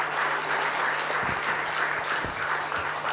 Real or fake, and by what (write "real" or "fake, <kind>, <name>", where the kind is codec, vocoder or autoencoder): real